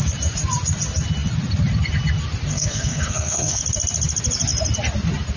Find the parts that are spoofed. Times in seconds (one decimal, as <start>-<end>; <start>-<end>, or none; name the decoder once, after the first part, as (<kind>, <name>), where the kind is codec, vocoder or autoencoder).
2.5-3.6 (codec, SNAC)

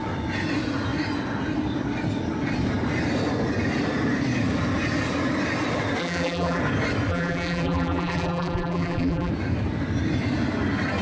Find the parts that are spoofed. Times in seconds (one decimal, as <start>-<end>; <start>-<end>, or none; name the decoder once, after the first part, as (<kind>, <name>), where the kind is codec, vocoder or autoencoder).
6.0-6.6 (vocoder, BigVGAN v2); 7.1-9.3

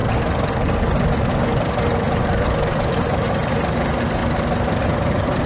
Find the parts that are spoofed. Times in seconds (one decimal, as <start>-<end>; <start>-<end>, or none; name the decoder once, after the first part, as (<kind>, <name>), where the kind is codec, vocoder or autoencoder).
1.3-4.2 (vocoder, BigVGAN v2); 5.1-5.5

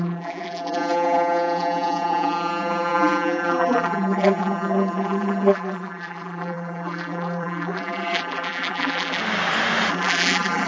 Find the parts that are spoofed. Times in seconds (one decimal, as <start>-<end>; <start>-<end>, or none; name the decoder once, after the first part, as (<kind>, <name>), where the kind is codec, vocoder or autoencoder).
0.0-9.2 (vocoder, BigVGAN v2); 9.9-10.7

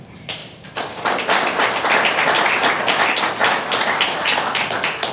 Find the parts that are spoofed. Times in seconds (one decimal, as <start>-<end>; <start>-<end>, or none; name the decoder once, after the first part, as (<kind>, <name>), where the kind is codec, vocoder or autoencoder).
none

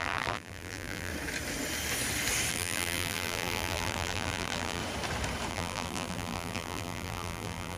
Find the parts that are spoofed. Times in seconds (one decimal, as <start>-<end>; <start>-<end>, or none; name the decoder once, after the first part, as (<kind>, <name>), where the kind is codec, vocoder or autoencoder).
0.0-1.1 (vocoder, BigVGAN v2); 2.5-4.8; 5.5-7.8

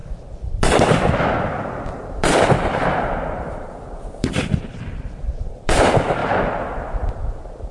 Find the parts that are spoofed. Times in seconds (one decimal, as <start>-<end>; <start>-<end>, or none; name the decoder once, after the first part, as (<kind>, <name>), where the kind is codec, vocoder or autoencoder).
0.0-6.2 (vocoder, BigVGAN v2); 7.1-7.7

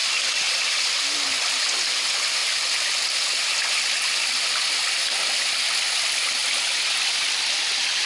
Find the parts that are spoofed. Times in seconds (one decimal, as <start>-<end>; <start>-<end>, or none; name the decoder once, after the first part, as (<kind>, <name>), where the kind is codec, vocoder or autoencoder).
none